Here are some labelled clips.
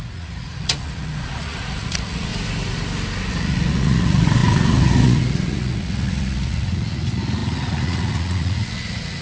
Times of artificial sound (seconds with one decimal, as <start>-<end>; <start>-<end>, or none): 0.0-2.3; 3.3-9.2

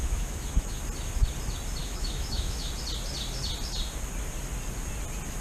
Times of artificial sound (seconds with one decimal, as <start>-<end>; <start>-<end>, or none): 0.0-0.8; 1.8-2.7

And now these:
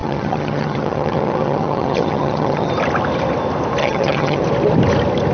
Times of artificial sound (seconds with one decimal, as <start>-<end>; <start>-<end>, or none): 0.0-2.7; 3.8-4.4

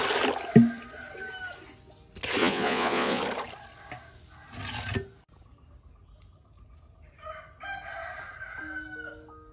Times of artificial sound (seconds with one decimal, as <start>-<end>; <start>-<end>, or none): 2.4-3.2